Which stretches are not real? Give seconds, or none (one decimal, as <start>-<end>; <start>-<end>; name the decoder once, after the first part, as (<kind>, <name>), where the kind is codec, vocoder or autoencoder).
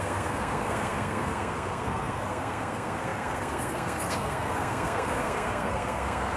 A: 0.0-6.4 (codec, SNAC)